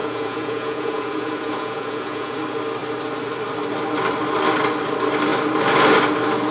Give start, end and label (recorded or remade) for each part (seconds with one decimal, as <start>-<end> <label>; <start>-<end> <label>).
0.0-2.4 remade; 2.4-6.5 recorded